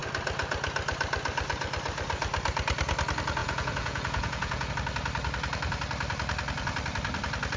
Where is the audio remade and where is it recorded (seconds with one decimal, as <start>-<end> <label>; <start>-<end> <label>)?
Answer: 0.0-3.4 recorded; 3.4-4.7 remade; 4.7-7.6 recorded